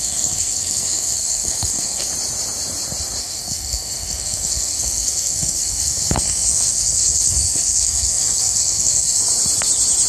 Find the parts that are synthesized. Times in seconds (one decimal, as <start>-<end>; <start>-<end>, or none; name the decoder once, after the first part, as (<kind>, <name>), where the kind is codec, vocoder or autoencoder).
0.0-2.1 (codec, SNAC); 3.2-9.2